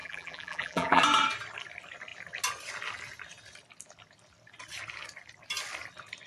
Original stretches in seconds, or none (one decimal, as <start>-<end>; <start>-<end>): 1.0-6.3